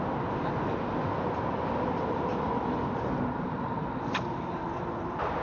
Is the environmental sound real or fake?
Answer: real